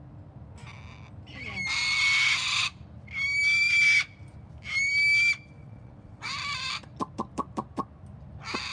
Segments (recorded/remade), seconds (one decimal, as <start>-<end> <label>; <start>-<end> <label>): 0.0-5.6 recorded; 5.6-6.3 remade; 6.3-8.7 recorded